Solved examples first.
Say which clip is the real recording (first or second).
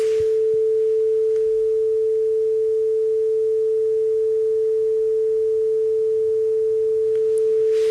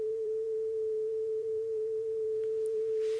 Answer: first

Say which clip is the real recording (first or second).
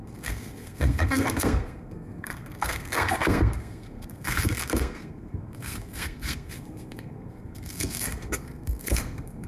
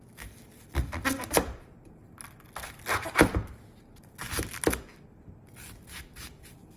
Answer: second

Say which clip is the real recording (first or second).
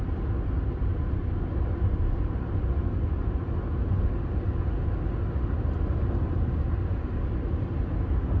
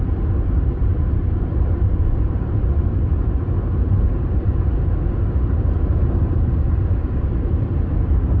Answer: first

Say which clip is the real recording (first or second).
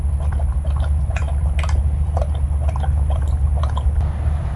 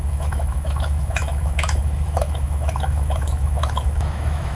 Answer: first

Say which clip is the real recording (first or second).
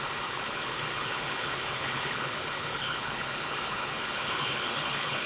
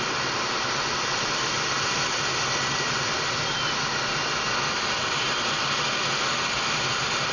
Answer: second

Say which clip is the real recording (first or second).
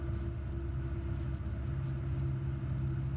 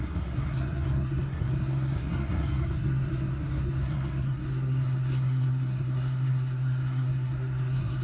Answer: first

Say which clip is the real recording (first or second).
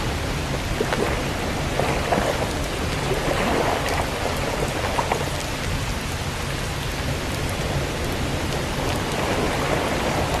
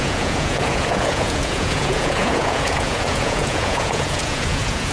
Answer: first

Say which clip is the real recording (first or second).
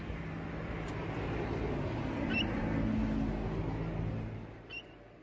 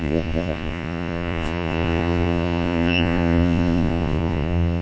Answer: first